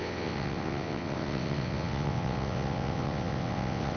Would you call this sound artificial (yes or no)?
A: yes